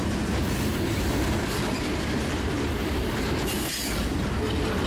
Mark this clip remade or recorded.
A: recorded